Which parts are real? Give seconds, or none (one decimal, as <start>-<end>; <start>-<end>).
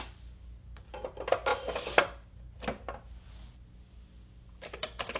0.0-5.2